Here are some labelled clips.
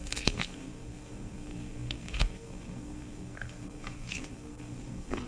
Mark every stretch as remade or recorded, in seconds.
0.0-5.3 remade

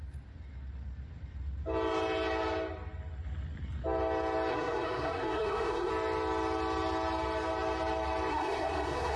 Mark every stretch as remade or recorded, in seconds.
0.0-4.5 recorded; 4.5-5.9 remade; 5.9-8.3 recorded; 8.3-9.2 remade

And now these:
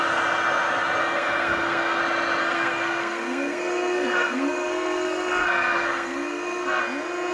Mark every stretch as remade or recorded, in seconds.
0.0-1.0 recorded; 1.0-2.0 remade; 2.0-2.4 recorded; 2.4-6.8 remade; 6.8-7.3 recorded

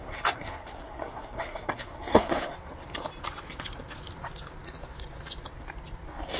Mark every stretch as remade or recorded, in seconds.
0.0-2.5 remade; 2.5-6.4 recorded

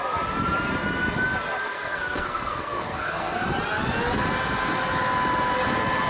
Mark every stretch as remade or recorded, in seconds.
0.0-1.7 recorded; 1.7-3.4 remade; 3.4-6.1 recorded

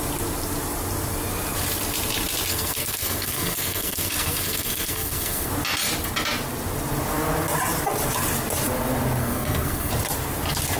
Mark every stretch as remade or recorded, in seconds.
0.0-2.5 recorded; 2.5-5.5 remade; 5.5-9.2 recorded; 9.2-9.9 remade; 9.9-10.8 recorded